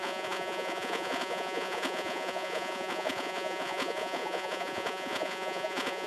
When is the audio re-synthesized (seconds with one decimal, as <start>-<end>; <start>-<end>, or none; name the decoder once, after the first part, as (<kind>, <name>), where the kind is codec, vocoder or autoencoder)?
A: 0.0-6.1 (vocoder, Vocos)